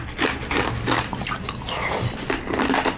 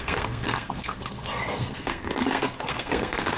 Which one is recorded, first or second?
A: first